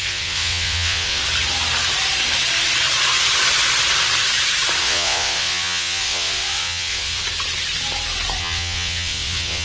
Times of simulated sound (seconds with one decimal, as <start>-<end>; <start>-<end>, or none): 0.0-1.2; 4.8-7.2; 8.4-9.6